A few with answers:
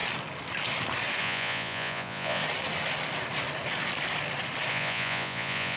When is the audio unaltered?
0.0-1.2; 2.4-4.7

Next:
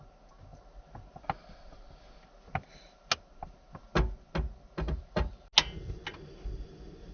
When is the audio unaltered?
0.0-7.1